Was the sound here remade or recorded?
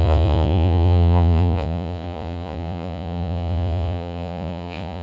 remade